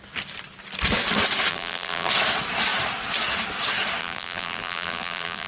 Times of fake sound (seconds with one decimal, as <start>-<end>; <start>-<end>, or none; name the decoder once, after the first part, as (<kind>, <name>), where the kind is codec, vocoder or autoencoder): 1.5-2.1 (vocoder, BigVGAN v2); 4.0-5.5